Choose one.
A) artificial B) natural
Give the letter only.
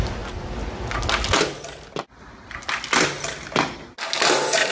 B